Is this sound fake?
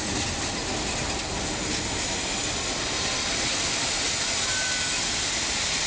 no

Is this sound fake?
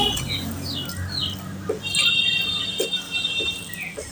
no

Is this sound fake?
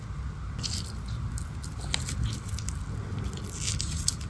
no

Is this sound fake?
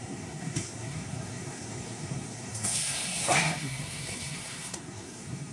yes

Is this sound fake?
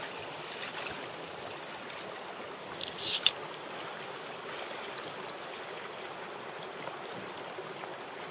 no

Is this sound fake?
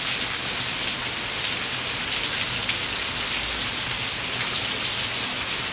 no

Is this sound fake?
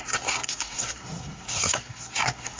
yes